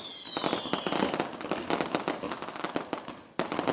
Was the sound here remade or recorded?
recorded